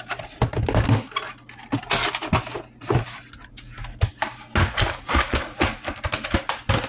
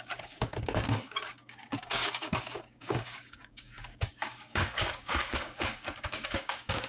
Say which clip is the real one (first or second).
first